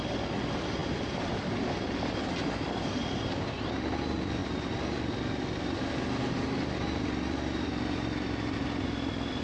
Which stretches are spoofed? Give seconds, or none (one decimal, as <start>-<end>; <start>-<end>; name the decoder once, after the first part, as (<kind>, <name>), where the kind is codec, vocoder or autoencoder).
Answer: 3.0-4.0 (vocoder, BigVGAN v2)